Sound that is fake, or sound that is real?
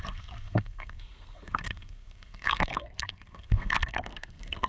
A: fake